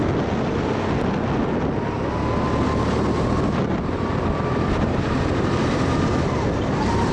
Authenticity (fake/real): real